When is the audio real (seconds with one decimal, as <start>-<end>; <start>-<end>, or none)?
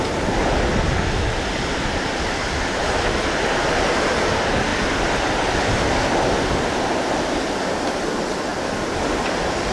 0.0-9.7